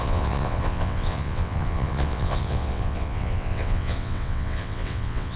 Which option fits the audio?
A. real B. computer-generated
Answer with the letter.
B